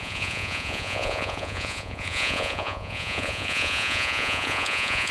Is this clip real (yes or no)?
no